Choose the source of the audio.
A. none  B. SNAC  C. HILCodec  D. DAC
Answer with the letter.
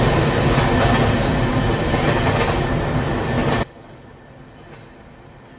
A